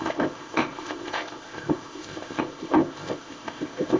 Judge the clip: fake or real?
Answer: fake